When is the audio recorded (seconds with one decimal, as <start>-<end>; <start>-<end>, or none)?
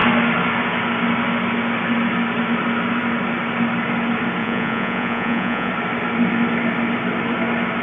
0.0-4.4; 5.7-7.8